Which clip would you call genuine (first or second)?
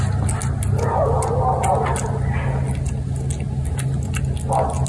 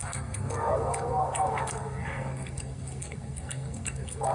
first